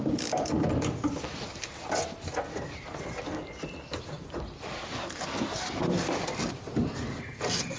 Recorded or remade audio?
recorded